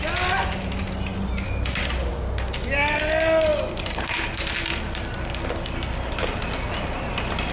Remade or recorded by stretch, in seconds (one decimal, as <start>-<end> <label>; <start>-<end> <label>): 0.0-7.5 recorded